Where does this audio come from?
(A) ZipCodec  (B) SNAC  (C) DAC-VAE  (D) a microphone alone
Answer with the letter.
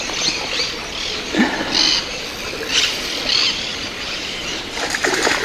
D